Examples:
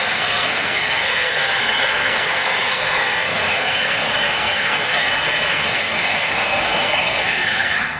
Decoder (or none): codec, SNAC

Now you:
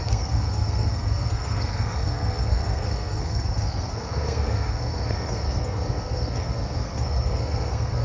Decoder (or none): codec, SNAC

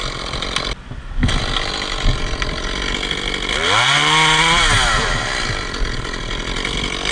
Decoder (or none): none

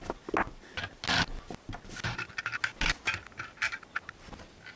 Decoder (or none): none